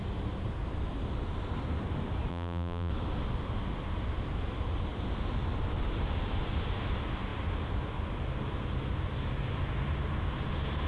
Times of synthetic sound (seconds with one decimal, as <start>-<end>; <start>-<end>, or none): 2.3-2.9